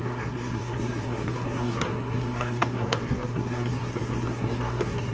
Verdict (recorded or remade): remade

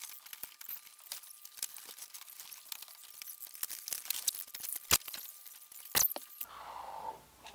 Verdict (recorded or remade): recorded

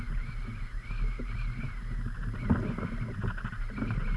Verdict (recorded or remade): recorded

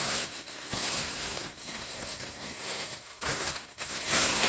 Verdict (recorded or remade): remade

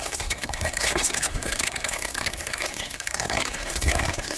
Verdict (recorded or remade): remade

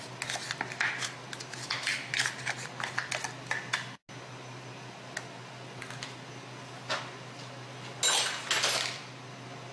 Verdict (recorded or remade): recorded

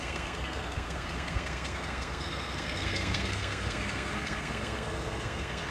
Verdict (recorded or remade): remade